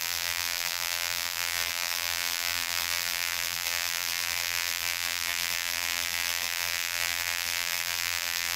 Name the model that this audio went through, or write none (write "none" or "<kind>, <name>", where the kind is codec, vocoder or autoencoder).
vocoder, BigVGAN v2